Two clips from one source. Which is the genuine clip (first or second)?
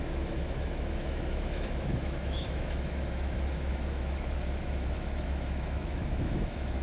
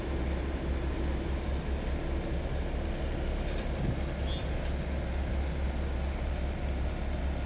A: second